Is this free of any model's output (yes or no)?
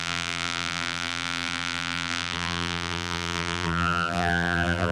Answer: no